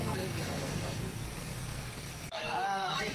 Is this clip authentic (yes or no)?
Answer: no